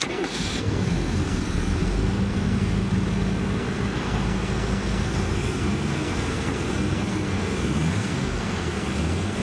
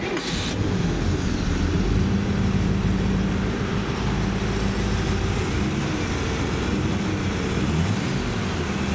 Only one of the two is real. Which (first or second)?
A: second